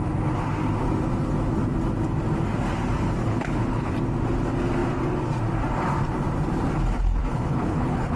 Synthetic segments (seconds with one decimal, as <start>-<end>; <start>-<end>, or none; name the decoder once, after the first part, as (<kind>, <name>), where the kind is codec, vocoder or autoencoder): 3.2-3.9 (codec, HILCodec); 7.2-8.2